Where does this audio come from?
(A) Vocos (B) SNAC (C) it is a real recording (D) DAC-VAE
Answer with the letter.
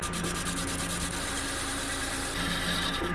C